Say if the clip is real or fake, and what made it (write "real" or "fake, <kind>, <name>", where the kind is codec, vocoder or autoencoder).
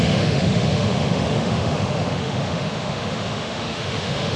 fake, autoencoder, DAC-VAE